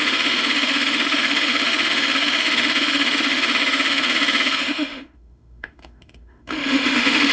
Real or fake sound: fake